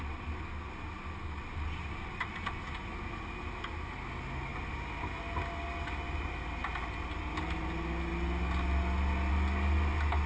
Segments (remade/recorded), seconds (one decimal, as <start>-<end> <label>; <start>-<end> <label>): 0.0-10.3 recorded